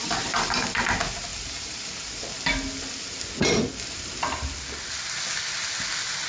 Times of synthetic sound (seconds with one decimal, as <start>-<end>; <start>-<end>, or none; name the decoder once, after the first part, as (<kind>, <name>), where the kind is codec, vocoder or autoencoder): 1.3-2.0 (vocoder, BigVGAN v2)